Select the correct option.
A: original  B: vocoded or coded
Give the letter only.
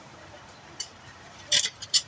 B